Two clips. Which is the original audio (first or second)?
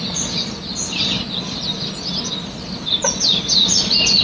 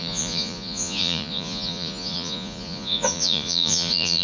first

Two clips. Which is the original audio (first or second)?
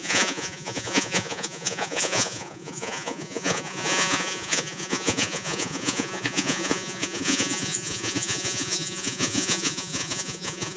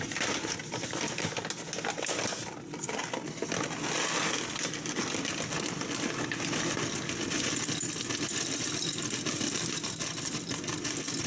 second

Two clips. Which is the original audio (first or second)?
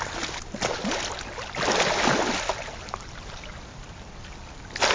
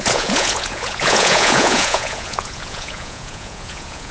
first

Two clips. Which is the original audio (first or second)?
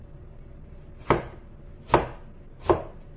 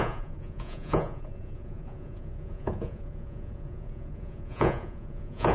first